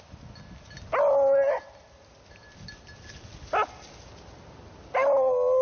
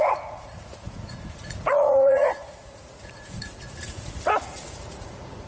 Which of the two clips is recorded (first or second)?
first